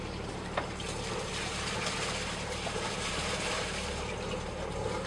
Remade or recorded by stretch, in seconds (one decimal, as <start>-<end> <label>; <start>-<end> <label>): 0.0-5.1 recorded

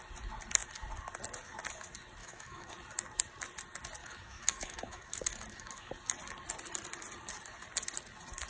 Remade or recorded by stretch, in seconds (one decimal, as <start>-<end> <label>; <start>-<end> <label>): 0.0-2.2 recorded; 2.2-2.7 remade; 2.7-4.0 recorded; 4.0-5.9 remade; 5.9-8.5 recorded